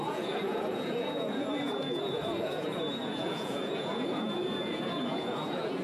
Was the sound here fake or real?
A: fake